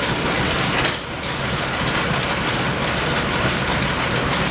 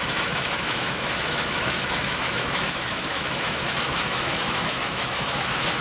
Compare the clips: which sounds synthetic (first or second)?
second